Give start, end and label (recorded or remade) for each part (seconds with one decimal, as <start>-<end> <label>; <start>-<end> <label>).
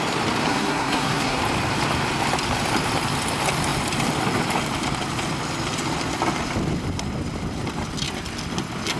0.0-0.5 recorded; 0.5-1.4 remade; 1.4-9.0 recorded